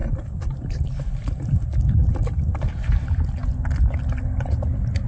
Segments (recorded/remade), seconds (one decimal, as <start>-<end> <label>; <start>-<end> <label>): 0.0-5.1 recorded